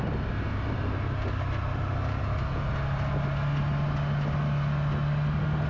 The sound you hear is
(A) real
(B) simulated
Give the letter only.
A